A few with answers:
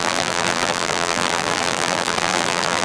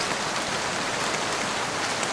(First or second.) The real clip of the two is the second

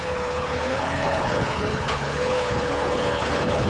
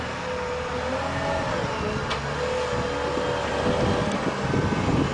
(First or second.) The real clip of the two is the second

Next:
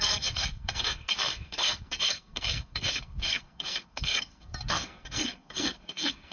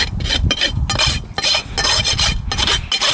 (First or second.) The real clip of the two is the second